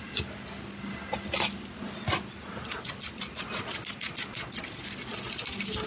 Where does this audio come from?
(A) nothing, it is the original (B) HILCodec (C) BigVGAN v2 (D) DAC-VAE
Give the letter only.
A